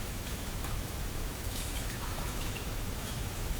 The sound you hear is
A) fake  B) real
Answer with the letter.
A